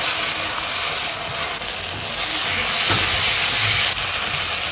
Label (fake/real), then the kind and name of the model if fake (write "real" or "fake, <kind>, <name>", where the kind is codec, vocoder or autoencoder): real